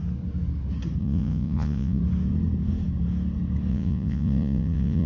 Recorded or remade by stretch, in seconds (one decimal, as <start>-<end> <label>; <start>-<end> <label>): 0.0-1.0 recorded; 1.0-2.0 remade; 2.0-3.7 recorded; 3.7-5.1 remade